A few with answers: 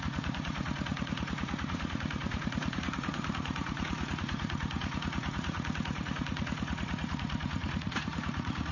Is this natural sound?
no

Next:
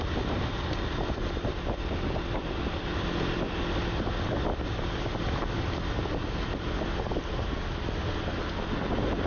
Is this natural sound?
yes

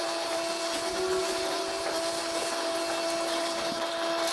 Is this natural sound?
yes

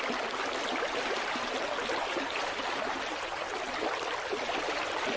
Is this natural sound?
yes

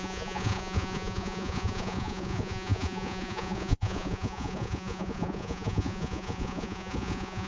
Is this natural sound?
no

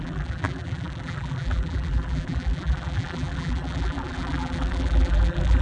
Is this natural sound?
no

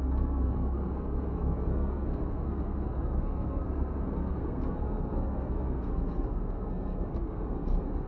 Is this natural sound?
no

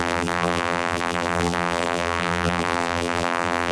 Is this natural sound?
no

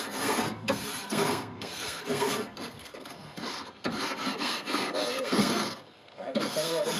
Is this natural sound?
no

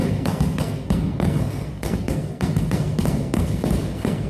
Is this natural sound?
no